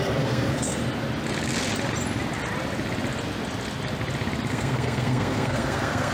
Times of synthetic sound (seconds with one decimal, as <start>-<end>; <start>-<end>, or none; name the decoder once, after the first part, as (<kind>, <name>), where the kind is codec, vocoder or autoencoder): 0.0-0.8 (codec, SNAC); 4.5-6.1